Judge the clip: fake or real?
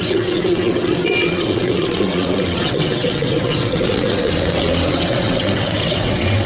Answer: fake